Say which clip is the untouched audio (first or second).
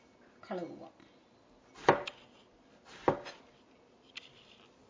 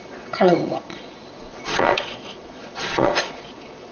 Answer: first